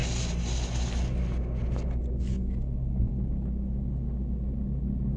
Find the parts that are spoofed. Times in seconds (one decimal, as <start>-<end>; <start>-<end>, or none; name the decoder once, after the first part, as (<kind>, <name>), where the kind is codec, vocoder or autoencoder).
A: none